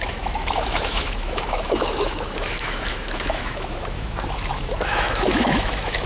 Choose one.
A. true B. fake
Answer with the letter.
B